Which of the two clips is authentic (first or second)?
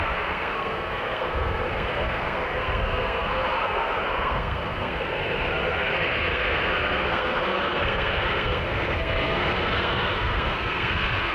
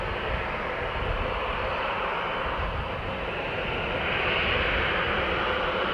second